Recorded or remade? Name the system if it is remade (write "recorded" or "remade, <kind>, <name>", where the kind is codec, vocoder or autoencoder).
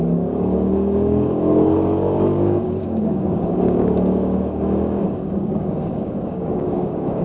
remade, codec, DAC